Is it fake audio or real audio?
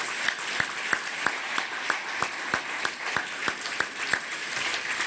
fake